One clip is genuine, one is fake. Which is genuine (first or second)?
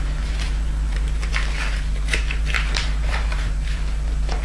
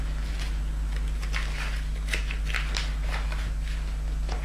second